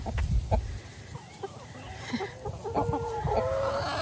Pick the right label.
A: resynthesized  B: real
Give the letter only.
B